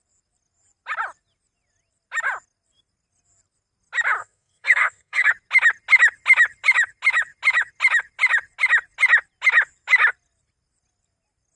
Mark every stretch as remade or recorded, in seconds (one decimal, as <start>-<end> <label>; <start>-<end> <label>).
0.0-4.2 recorded; 4.2-5.3 remade; 5.3-11.6 recorded